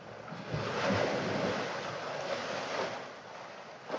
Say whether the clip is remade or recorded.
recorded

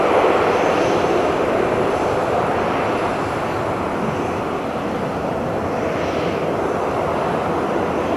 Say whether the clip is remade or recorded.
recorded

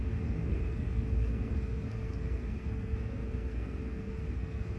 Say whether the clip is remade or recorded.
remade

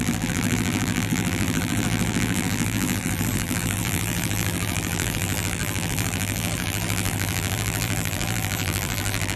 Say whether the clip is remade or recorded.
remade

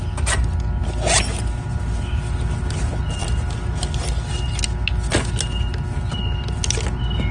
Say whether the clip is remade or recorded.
recorded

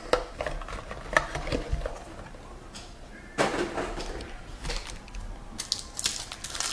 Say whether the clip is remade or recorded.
recorded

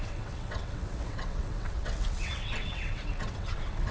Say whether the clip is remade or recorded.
remade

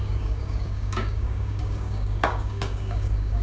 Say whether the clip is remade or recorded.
remade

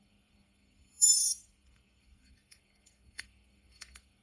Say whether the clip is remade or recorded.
remade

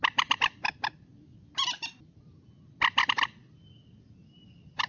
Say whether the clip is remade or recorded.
recorded